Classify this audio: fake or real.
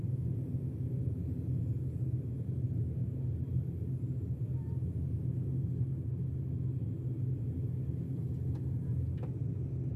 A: real